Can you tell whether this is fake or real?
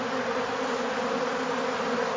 real